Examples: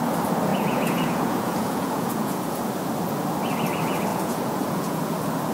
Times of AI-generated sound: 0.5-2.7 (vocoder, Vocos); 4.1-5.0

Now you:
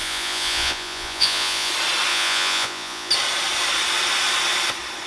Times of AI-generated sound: 0.0-1.7 (vocoder, Vocos); 2.1-3.1

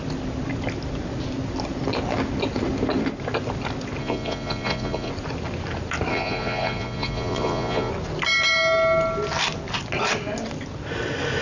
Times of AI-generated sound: 4.0-5.1 (vocoder, Vocos); 6.1-7.9

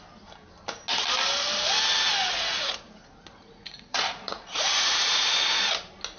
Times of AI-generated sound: 2.2-5.7 (vocoder, Vocos)